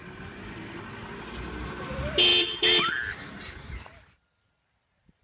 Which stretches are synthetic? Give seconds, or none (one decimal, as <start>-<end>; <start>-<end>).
none